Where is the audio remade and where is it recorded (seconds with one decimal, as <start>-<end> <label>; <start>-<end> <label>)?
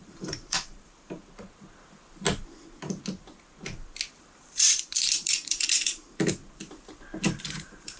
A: 0.0-1.2 remade; 1.2-4.2 recorded; 4.2-6.4 remade; 6.4-7.4 recorded; 7.4-8.0 remade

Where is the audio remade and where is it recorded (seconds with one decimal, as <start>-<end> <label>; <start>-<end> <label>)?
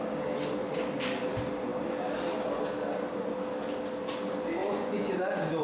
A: 0.0-4.6 recorded; 4.6-5.6 remade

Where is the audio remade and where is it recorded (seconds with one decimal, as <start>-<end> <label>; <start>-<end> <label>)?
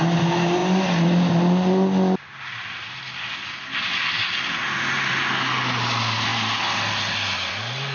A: 0.0-7.9 recorded